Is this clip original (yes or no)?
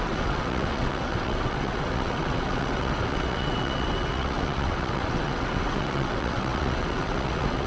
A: no